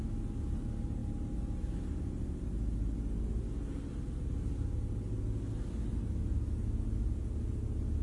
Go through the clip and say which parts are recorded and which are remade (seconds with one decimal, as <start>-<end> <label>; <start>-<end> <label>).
0.0-8.0 recorded